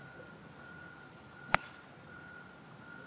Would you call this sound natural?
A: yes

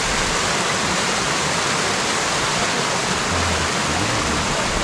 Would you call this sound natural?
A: yes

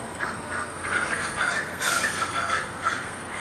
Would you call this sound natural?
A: no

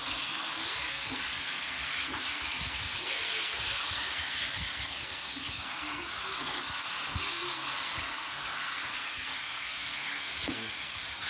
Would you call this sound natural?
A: no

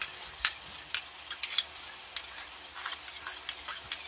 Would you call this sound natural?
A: yes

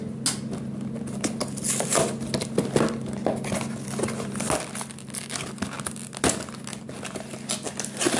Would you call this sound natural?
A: yes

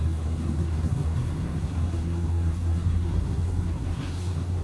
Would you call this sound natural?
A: no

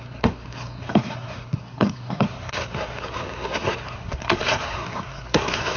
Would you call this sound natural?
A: no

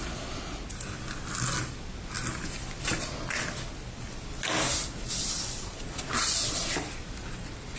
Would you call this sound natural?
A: yes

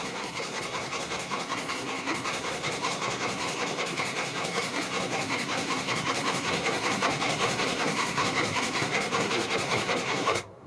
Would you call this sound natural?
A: no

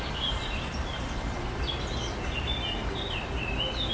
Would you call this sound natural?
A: yes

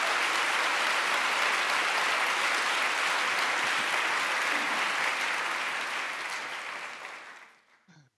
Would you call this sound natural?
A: yes